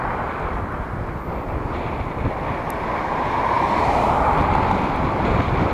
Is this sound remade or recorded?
recorded